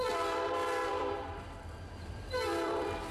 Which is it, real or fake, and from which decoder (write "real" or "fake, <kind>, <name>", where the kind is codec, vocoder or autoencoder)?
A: fake, vocoder, BigVGAN v2